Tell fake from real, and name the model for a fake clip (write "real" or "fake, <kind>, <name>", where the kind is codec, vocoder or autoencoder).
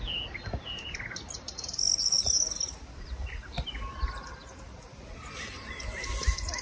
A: real